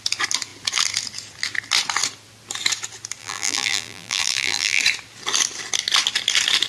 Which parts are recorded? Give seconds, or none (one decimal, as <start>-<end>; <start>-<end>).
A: 0.0-3.2; 4.8-6.7

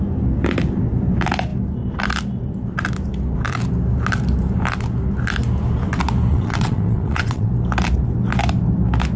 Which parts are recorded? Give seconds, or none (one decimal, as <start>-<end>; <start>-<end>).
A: 0.0-6.3; 7.5-9.2